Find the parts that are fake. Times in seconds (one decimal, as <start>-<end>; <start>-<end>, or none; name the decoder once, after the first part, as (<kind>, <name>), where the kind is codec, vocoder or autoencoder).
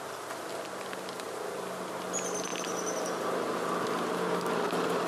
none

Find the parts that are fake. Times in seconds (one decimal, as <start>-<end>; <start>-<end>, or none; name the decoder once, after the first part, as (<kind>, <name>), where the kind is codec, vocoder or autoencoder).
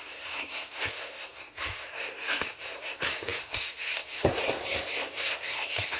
0.0-6.0 (codec, SNAC)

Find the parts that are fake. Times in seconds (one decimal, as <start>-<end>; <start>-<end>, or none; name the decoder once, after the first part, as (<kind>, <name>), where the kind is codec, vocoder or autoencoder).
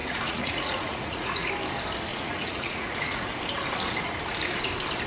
0.0-1.5 (vocoder, Vocos); 2.1-3.3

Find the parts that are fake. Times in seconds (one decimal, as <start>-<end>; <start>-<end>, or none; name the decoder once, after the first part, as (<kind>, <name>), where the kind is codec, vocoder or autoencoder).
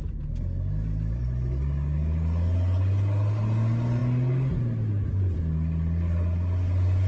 none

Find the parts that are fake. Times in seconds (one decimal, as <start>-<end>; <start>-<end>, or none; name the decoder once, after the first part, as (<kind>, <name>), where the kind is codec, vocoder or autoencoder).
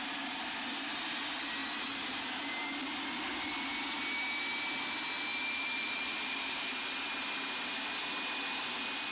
5.3-6.6 (vocoder, BigVGAN v2)